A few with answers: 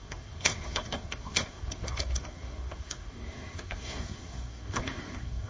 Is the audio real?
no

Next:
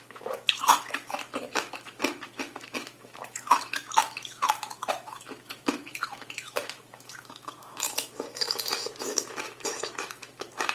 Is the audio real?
no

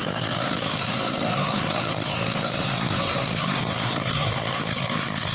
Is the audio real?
no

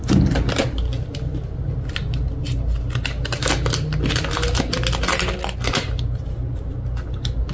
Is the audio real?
yes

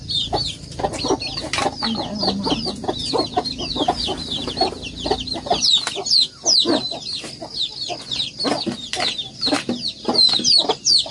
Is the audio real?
yes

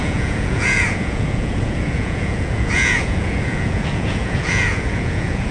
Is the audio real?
no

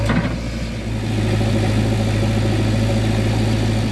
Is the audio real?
yes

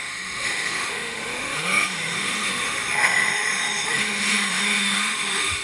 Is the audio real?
no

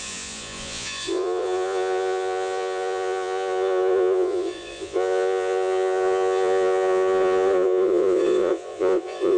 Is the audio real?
no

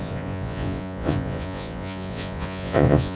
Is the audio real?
no